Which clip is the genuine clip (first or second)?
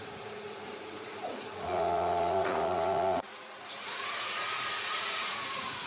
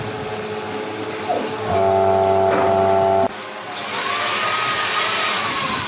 second